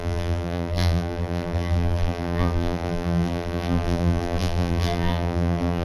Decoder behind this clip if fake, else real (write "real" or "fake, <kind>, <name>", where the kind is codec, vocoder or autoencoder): fake, vocoder, BigVGAN v2